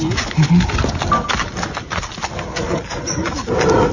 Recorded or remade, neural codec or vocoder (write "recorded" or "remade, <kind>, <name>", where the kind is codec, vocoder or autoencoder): recorded